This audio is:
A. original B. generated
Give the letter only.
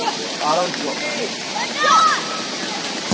B